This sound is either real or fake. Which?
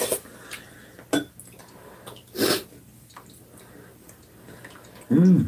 real